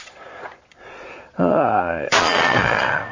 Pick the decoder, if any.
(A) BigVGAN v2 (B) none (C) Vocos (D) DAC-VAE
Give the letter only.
C